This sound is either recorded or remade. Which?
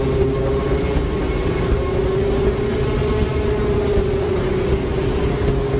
recorded